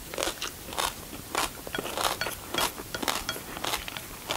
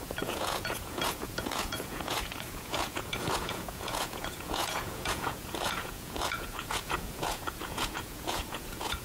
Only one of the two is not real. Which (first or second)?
second